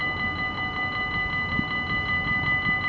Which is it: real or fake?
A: real